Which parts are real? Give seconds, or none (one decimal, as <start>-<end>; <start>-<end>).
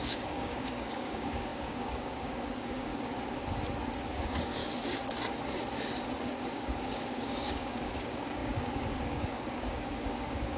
2.9-4.1; 4.6-6.5